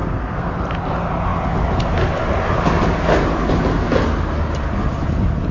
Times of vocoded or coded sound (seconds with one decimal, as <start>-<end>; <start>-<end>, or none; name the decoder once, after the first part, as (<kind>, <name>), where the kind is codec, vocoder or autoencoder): 0.0-0.5 (codec, SNAC)